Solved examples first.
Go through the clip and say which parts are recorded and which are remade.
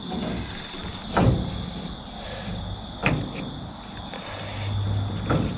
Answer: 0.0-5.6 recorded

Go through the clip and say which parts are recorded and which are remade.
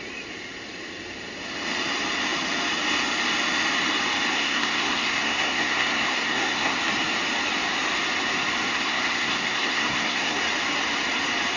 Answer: 0.0-4.3 recorded; 4.3-6.8 remade; 6.8-8.7 recorded; 8.7-10.4 remade; 10.4-11.6 recorded